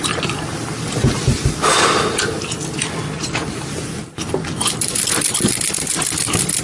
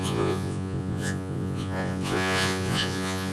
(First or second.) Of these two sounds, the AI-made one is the second